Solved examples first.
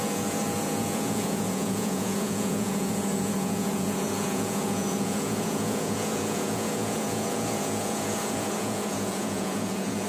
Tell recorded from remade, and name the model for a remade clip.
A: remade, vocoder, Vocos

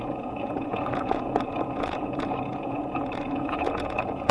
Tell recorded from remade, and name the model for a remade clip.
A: remade, vocoder, Vocos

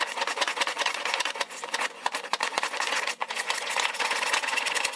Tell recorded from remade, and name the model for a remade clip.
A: remade, vocoder, Vocos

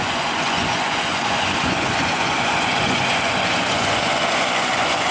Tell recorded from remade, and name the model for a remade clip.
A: remade, vocoder, Vocos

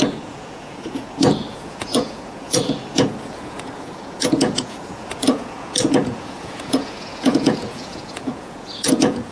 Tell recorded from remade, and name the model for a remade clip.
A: remade, vocoder, Vocos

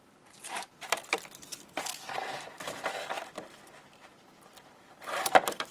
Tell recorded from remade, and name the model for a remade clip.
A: recorded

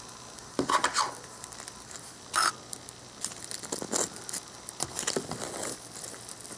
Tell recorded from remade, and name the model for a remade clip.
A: recorded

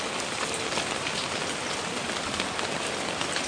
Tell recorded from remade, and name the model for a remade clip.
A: recorded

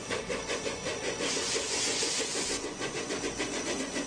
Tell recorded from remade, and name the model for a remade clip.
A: remade, vocoder, Vocos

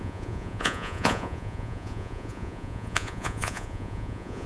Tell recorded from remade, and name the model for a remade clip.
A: remade, vocoder, Vocos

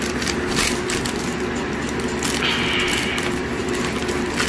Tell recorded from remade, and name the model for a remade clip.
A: recorded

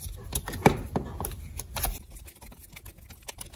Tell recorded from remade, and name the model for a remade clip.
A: recorded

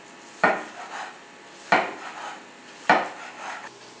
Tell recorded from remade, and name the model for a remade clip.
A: recorded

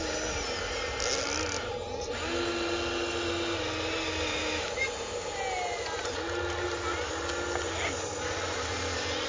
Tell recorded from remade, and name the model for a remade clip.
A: recorded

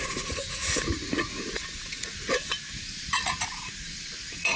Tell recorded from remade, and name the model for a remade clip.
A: remade, vocoder, Vocos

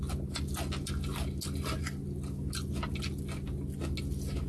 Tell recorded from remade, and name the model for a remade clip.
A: recorded